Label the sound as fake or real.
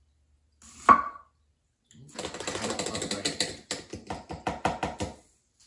real